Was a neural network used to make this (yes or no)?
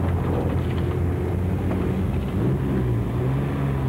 no